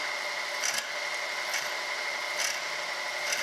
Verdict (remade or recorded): recorded